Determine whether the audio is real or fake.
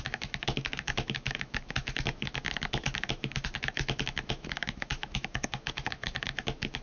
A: fake